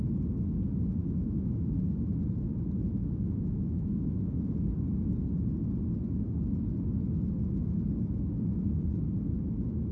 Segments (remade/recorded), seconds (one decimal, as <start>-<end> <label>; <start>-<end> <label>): 0.0-1.0 recorded; 1.0-1.8 remade; 1.8-3.0 recorded; 3.0-4.2 remade; 4.2-9.9 recorded